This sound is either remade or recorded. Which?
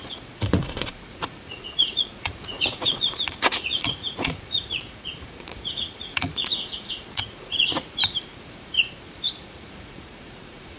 remade